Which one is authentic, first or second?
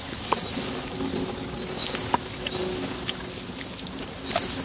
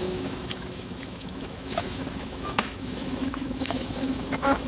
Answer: first